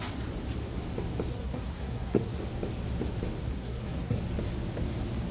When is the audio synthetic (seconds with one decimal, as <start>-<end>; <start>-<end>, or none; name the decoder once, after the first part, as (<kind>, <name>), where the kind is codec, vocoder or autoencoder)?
1.3-2.4 (codec, SNAC); 3.4-4.2